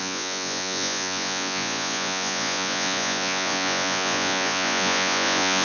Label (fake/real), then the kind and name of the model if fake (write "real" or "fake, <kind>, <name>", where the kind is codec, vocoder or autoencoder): fake, vocoder, Vocos